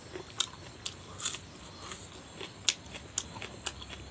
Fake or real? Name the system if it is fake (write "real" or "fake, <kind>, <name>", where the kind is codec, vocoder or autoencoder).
real